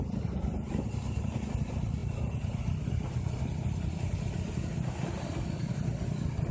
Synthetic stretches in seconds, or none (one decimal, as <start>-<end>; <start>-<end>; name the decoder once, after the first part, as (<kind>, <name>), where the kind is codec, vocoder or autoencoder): none